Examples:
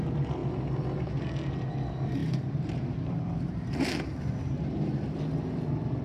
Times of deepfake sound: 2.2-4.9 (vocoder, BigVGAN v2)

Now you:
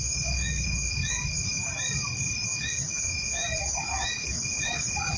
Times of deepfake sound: 0.0-1.7 (autoencoder, DAC-VAE); 2.3-5.2

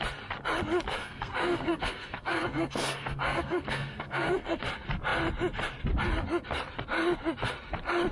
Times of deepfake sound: 1.0-4.6 (codec, SNAC)

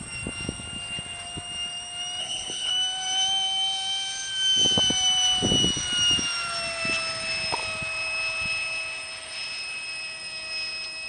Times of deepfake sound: 2.2-2.7 (codec, HILCodec)

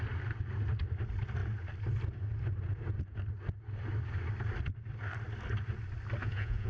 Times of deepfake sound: 6.2-6.7 (vocoder, Vocos)

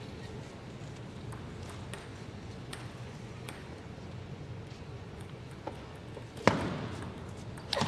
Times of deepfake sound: 2.1-6.1 (vocoder, Vocos)